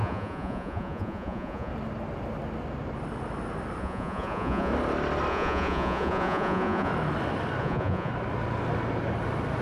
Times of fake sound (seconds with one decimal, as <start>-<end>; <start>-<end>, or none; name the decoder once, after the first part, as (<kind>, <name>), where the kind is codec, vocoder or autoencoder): 0.0-1.7 (vocoder, Vocos); 3.8-4.7; 5.3-6.9; 7.6-8.1